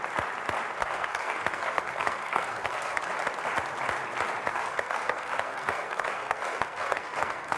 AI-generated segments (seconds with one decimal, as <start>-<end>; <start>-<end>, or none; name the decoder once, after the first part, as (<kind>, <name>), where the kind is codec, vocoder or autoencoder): 0.8-3.1 (codec, SNAC); 4.5-7.6